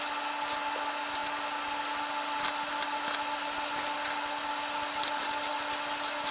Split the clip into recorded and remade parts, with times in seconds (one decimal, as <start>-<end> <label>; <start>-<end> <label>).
0.0-6.3 recorded